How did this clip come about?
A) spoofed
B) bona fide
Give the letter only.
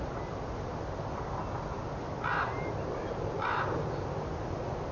B